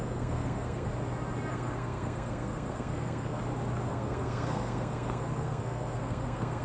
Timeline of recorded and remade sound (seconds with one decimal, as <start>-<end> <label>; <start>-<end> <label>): 0.0-0.9 remade; 0.9-1.5 recorded; 1.5-3.4 remade; 3.4-3.9 recorded; 3.9-6.6 remade